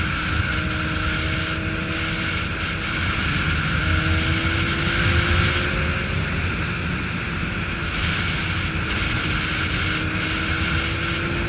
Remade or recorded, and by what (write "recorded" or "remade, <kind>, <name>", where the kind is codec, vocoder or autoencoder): recorded